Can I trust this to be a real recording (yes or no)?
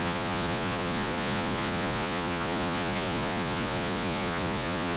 no